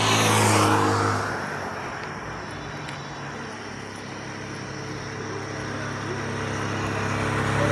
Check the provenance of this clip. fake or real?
real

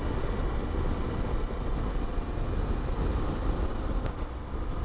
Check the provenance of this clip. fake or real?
real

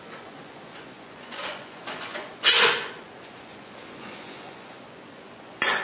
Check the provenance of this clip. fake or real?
fake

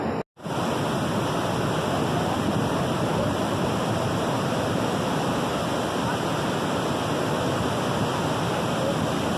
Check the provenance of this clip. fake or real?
real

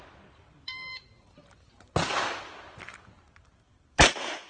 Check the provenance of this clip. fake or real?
fake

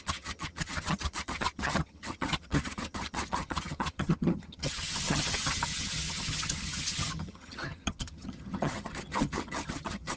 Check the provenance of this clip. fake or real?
fake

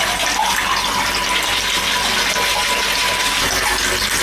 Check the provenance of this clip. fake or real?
real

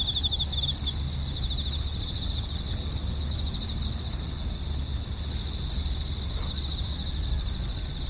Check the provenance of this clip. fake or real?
real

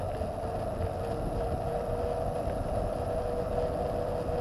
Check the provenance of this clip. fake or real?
real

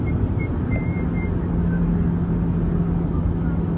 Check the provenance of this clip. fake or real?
real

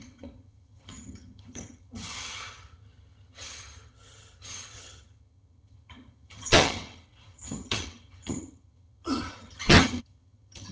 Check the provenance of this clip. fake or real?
fake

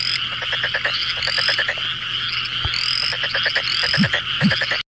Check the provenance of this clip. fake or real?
real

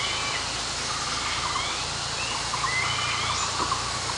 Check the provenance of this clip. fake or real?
real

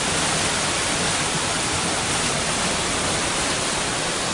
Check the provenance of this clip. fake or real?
real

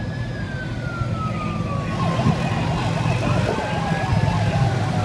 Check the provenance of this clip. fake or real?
real